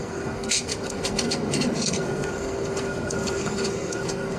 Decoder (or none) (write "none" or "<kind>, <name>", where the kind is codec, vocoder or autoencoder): codec, SNAC